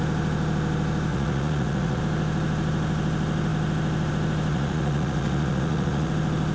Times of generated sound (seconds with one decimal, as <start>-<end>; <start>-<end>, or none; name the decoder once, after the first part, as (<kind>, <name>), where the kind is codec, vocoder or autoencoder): 1.1-2.0 (vocoder, Vocos); 4.5-6.1